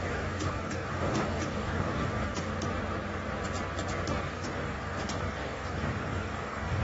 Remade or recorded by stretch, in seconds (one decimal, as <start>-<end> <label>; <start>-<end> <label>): 0.0-2.5 remade; 2.5-4.1 recorded; 4.1-6.8 remade